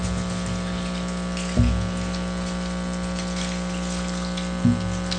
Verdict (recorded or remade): recorded